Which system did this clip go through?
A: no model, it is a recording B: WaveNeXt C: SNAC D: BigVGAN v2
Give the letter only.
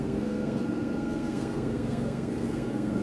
C